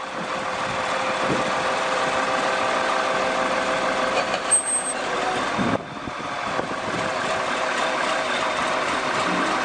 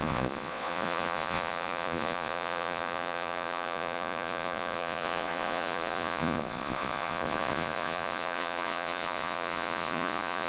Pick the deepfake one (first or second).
second